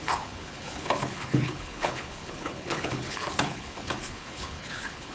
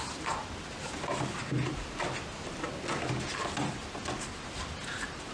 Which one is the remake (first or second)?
first